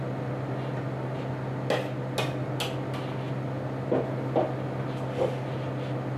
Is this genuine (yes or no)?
yes